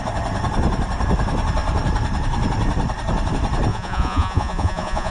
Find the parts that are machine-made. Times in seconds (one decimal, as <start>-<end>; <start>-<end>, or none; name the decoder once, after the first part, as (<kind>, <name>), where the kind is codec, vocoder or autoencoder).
3.7-5.1 (vocoder, Vocos)